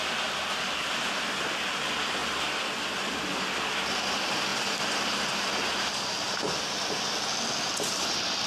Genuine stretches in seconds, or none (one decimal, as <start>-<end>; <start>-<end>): 0.0-8.5